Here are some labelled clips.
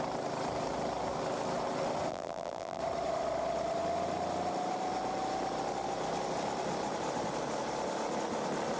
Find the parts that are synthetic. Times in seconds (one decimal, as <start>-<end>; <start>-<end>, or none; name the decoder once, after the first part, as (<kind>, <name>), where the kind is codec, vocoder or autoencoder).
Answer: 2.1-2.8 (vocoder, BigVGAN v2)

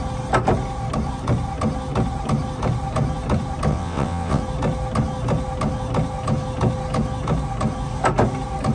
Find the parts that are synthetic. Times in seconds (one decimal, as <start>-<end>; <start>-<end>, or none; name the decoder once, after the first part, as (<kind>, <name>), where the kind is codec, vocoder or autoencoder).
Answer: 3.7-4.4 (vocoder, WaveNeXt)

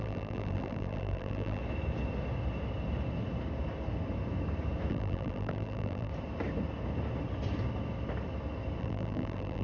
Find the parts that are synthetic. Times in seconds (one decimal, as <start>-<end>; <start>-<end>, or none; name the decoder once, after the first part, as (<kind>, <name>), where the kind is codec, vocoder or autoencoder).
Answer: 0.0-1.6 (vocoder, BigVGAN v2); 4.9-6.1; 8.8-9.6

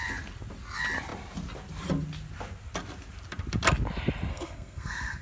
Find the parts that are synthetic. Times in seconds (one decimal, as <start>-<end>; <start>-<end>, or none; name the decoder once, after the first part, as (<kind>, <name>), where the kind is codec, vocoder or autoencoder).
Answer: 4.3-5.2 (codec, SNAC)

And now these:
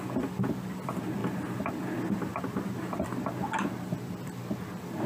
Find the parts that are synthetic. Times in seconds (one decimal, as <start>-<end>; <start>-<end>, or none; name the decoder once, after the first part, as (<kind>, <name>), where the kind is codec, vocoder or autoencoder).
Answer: none